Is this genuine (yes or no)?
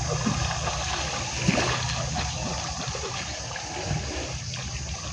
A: yes